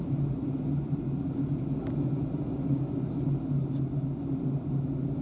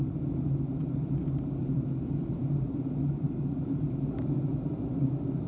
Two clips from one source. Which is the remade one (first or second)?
second